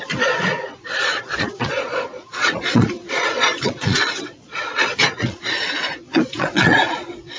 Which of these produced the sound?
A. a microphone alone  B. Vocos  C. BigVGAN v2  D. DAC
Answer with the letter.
B